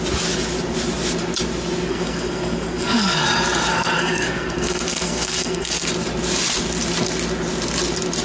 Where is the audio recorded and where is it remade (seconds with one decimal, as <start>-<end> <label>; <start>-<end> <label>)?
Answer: 0.0-1.9 recorded; 1.9-3.2 remade; 3.2-3.7 recorded; 3.7-5.9 remade; 5.9-8.2 recorded